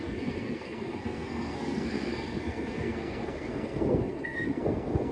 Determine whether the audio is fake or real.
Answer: fake